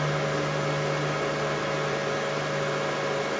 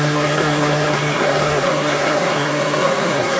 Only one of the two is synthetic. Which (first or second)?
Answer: second